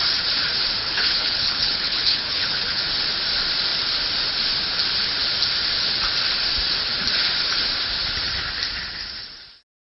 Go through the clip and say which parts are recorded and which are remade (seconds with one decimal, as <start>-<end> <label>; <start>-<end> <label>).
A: 0.0-0.8 recorded; 0.8-2.8 remade; 2.8-9.9 recorded